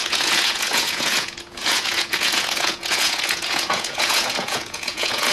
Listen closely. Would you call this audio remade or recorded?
remade